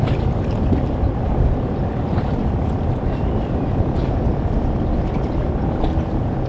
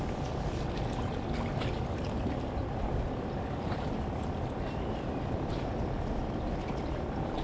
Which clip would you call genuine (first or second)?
second